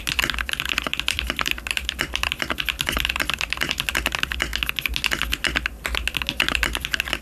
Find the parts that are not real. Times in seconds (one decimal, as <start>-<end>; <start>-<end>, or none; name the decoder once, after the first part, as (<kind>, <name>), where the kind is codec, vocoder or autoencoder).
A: 0.9-3.7 (vocoder, BigVGAN v2)